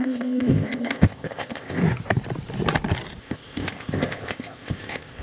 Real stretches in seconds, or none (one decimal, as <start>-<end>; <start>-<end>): 1.8-3.2